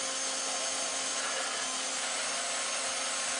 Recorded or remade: recorded